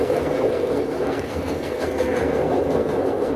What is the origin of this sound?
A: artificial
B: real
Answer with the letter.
A